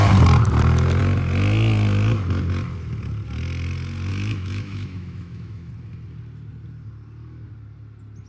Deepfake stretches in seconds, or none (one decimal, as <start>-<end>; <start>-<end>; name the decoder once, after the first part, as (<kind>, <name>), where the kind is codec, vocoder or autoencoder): 4.1-5.7 (autoencoder, DAC-VAE)